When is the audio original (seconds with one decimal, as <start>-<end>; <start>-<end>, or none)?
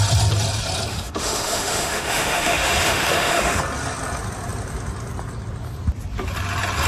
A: 0.0-0.9; 3.6-6.9